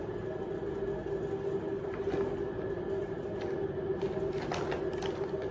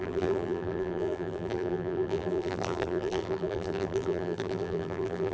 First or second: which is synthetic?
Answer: second